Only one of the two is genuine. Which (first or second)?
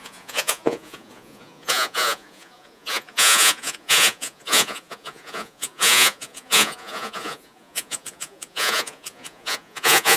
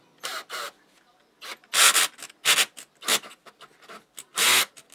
second